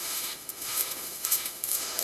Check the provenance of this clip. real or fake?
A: fake